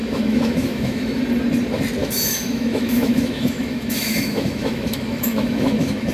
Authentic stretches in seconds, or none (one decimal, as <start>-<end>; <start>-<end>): 1.2-2.0